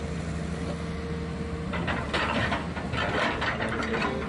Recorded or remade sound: recorded